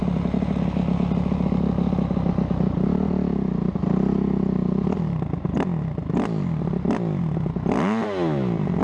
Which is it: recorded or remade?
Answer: recorded